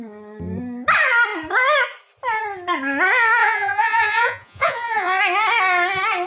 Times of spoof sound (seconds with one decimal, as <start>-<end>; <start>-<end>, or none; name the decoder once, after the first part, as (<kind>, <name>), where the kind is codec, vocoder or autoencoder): 3.4-5.2 (vocoder, Vocos)